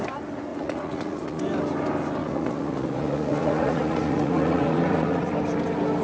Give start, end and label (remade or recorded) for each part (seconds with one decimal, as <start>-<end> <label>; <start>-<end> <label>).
0.0-0.5 recorded; 0.5-1.4 remade; 1.4-2.2 recorded; 2.2-5.3 remade; 5.3-6.0 recorded

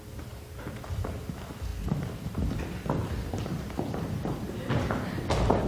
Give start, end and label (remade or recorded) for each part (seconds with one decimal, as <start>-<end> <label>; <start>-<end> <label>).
0.0-5.7 recorded

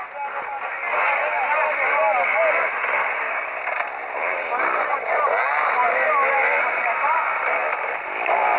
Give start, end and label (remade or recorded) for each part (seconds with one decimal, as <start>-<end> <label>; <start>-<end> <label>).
0.0-8.6 recorded

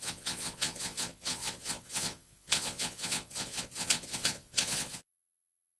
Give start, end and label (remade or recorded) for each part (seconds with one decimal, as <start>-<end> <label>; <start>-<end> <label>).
0.0-5.8 remade

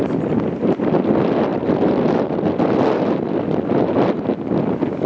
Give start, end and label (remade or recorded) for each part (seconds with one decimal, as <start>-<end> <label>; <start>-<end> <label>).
0.0-5.1 recorded

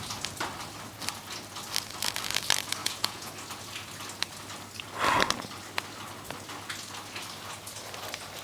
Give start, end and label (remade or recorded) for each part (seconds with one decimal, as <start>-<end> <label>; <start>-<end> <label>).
0.0-2.8 recorded; 2.8-3.3 remade; 3.3-8.4 recorded